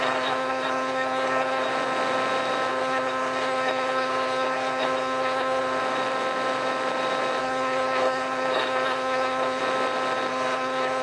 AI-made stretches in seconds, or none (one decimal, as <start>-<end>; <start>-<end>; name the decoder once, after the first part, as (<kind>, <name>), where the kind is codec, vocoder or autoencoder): 0.0-1.7 (codec, SNAC); 2.7-5.8; 7.4-9.6; 10.3-11.0